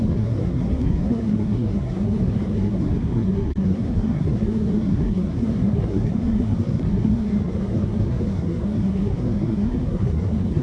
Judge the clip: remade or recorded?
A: remade